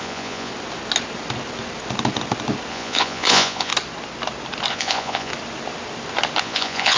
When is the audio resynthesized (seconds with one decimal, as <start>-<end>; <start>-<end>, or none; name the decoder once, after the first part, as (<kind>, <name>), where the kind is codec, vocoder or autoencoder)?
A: 0.0-0.5 (vocoder, Vocos); 2.7-3.7; 4.7-5.3; 6.4-7.0